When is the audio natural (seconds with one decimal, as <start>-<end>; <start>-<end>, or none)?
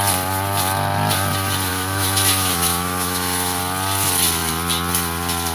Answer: 0.0-1.7; 3.6-5.5